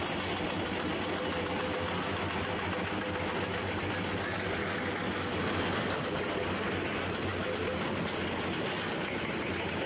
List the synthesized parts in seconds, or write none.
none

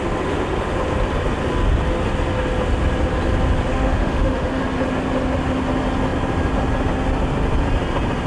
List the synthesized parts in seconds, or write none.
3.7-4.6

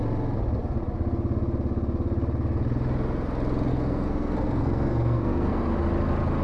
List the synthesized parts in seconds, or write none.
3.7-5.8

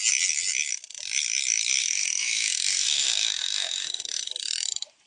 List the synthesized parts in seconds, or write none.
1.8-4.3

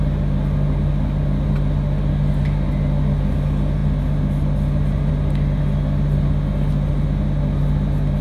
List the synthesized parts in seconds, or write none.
none

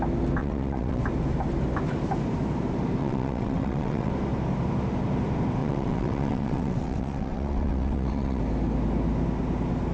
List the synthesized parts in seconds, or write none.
0.4-1.0; 3.0-4.1; 5.6-8.4

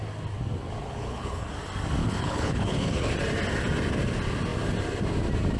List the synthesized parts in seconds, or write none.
0.8-1.5; 2.0-3.1

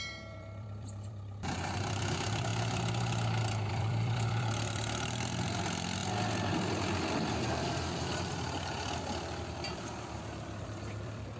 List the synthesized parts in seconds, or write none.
0.0-6.0; 6.5-11.4